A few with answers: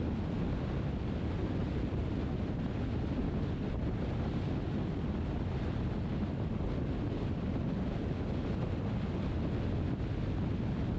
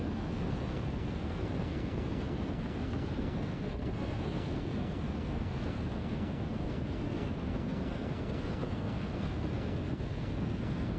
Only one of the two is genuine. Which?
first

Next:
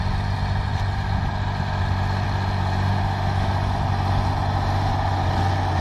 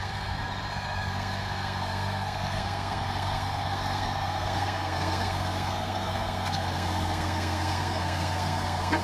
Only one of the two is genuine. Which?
first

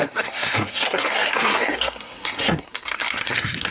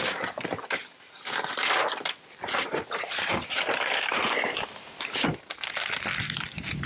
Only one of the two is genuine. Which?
second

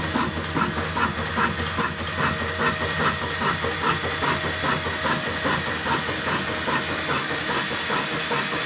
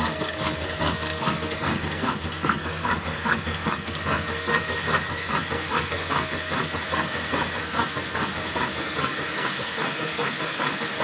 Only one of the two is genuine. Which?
first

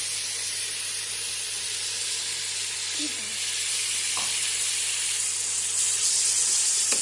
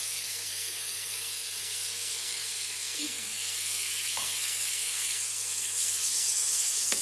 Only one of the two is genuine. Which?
first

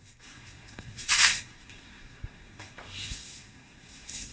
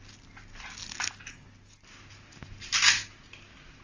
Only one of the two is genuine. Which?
second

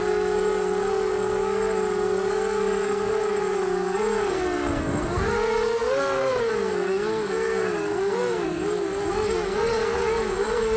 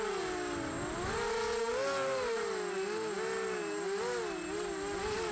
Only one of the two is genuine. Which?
second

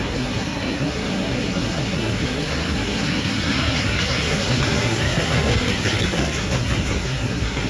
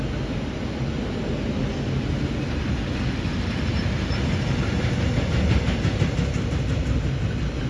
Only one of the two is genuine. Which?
second